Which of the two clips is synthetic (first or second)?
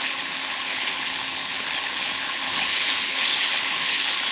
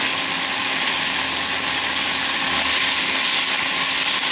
first